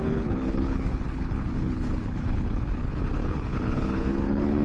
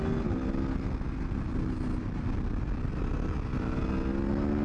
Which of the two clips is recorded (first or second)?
second